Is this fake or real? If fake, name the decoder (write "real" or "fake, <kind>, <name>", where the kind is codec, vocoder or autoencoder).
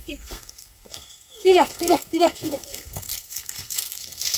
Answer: fake, codec, SNAC